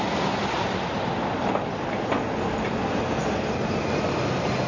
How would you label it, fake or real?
real